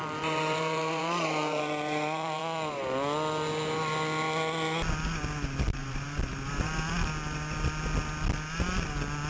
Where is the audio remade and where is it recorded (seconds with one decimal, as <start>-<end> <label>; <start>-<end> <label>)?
0.0-2.4 remade; 2.4-5.8 recorded; 5.8-6.7 remade; 6.7-9.3 recorded

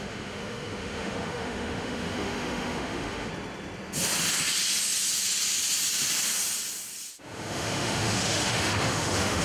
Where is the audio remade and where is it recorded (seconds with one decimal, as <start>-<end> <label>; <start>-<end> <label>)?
0.0-3.3 remade; 3.3-7.1 recorded; 7.1-9.4 remade